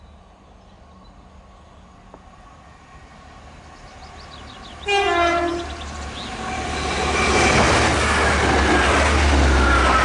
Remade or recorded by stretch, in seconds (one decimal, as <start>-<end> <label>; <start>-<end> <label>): 0.0-10.0 recorded